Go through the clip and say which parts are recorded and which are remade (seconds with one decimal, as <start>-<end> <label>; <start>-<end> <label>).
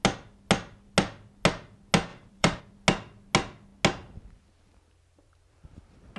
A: 0.0-2.1 recorded; 2.1-2.6 remade; 2.6-6.2 recorded